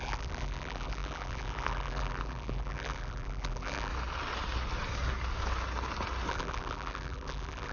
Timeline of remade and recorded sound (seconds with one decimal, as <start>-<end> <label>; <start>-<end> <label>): 0.0-3.9 remade; 3.9-6.3 recorded; 6.3-7.7 remade

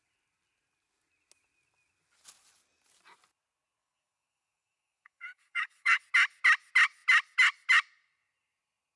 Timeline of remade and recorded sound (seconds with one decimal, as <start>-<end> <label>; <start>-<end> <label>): 0.0-3.8 recorded; 3.8-6.0 remade; 6.0-9.0 recorded

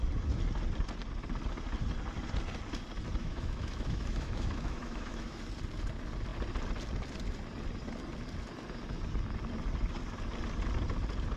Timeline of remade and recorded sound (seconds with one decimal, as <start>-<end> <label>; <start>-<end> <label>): 0.0-3.2 recorded; 3.2-5.4 remade; 5.4-11.4 recorded

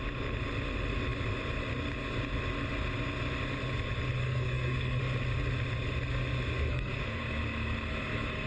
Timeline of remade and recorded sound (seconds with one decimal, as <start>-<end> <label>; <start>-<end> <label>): 0.0-4.2 recorded; 4.2-5.0 remade; 5.0-6.7 recorded; 6.7-7.2 remade; 7.2-8.5 recorded

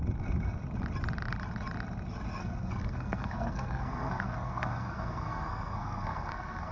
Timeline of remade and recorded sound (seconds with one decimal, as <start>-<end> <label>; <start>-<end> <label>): 0.0-2.4 recorded; 2.4-6.7 remade

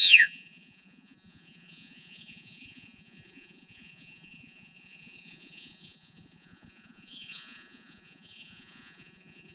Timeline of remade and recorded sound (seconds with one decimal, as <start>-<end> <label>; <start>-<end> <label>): 0.0-9.5 remade